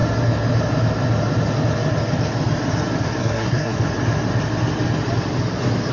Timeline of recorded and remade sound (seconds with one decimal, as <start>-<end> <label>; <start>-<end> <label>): 0.0-3.2 recorded; 3.2-3.8 remade; 3.8-5.9 recorded